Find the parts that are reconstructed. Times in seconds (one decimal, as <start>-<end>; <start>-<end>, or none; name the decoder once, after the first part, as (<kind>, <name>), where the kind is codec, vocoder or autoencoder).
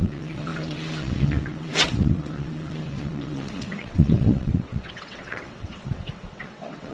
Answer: 0.0-6.9 (vocoder, WaveNeXt)